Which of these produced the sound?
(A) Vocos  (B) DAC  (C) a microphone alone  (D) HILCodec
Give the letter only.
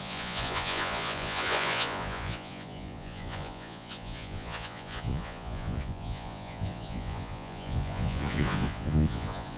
A